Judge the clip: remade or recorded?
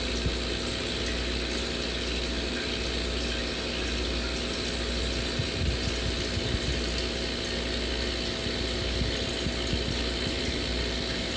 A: recorded